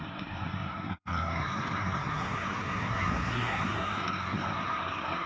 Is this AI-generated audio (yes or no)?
yes